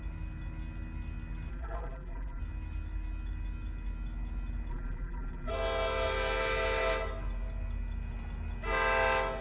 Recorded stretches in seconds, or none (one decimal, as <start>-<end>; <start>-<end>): 0.0-1.5; 2.4-4.7; 5.5-9.4